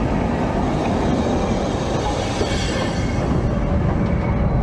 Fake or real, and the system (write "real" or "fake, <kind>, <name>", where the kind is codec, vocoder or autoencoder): real